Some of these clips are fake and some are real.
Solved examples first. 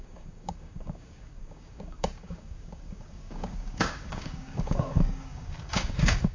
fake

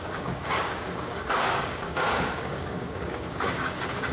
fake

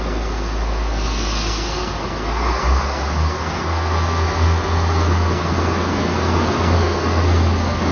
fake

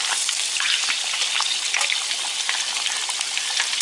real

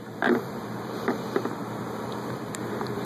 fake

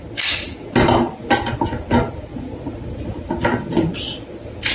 real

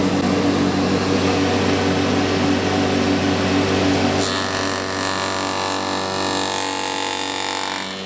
real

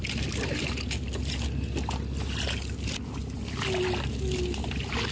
real